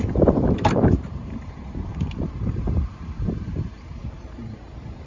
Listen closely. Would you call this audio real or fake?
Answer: fake